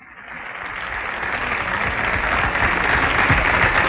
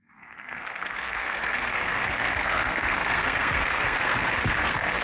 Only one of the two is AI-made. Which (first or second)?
second